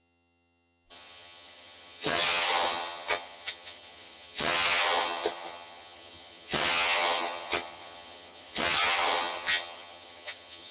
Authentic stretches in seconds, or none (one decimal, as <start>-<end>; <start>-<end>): none